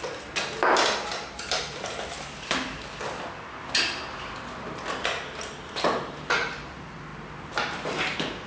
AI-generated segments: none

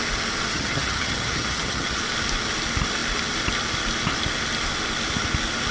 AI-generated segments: 0.5-2.0 (vocoder, HiFi-GAN)

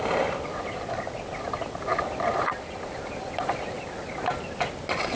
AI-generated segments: none

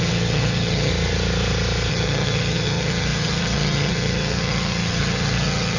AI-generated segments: 0.0-0.9 (vocoder, HiFi-GAN); 1.9-5.8

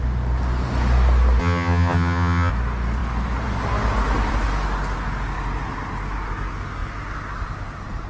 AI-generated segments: 1.4-2.5 (vocoder, HiFi-GAN)

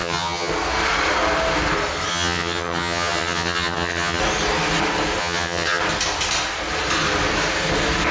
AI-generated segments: 0.0-0.5 (vocoder, HiFi-GAN); 2.1-4.2; 5.2-5.8

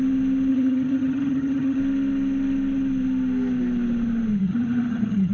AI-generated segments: 0.5-1.8 (vocoder, HiFi-GAN); 4.4-5.3